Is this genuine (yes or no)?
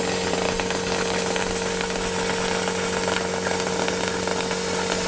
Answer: yes